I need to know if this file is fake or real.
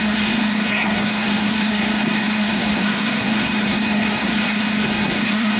fake